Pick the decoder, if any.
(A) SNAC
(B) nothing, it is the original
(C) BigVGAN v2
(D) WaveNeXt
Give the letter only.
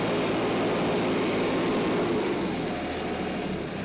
B